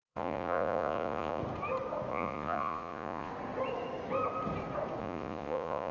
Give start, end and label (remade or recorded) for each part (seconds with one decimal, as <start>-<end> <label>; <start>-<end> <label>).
0.0-1.4 remade; 1.4-2.1 recorded; 2.1-3.3 remade; 3.3-5.0 recorded; 5.0-5.9 remade